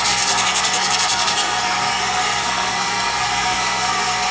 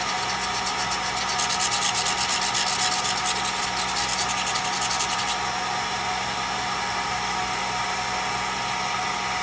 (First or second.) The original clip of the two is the second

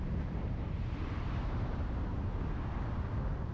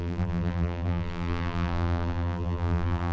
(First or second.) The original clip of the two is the first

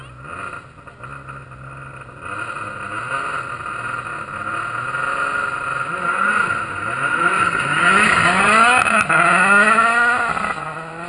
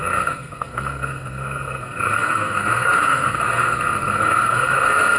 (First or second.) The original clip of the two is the first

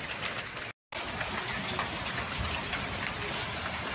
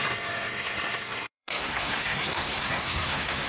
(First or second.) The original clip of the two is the first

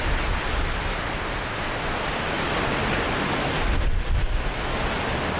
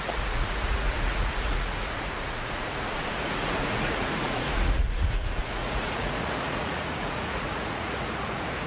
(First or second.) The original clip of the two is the first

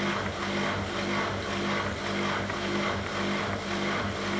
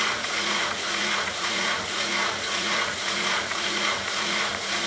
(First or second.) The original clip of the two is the first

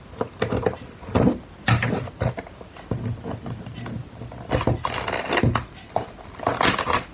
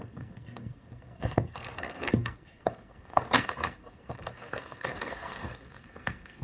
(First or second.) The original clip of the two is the first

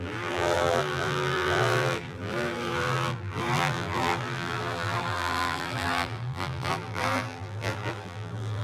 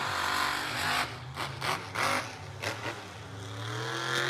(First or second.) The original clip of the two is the second